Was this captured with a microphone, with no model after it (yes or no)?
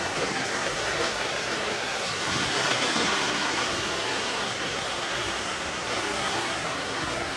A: no